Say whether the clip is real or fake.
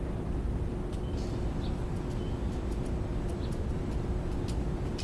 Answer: real